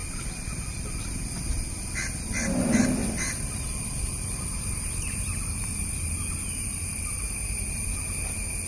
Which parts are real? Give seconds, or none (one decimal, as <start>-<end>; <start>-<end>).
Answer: 1.4-3.0; 7.9-8.7